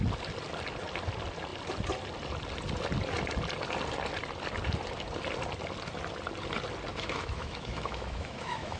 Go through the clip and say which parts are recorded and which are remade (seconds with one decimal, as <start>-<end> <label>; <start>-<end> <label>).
0.0-6.9 recorded; 6.9-8.8 remade